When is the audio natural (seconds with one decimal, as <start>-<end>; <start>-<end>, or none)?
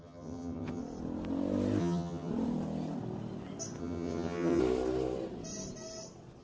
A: 0.8-1.8; 2.3-3.8; 4.6-6.4